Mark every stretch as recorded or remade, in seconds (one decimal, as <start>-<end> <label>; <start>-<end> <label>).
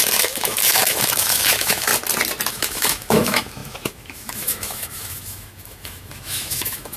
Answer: 0.0-1.9 remade; 1.9-2.5 recorded; 2.5-7.0 remade